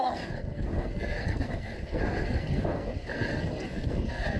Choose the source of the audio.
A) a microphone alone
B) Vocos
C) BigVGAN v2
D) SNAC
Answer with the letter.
D